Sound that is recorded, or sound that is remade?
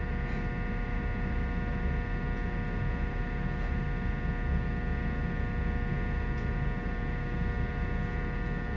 recorded